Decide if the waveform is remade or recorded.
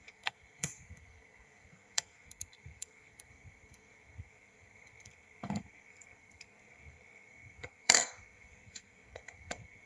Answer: remade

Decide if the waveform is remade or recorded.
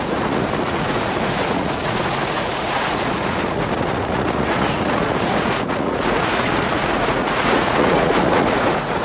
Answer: remade